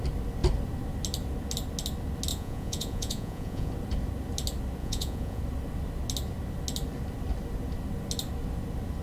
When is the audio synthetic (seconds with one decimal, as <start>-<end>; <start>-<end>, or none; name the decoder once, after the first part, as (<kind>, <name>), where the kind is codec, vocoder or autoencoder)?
2.3-3.7 (vocoder, Vocos); 4.8-5.4